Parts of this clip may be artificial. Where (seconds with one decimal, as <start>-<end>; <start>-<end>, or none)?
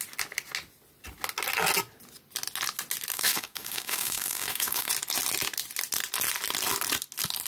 3.1-4.9